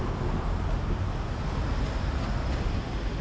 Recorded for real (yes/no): yes